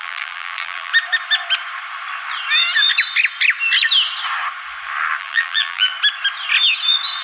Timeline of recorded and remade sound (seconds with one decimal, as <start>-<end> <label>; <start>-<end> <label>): 0.0-0.9 remade; 0.9-5.2 recorded; 5.2-5.9 remade; 5.9-7.2 recorded